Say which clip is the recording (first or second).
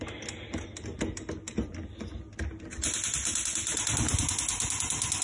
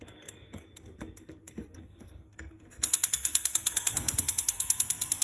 first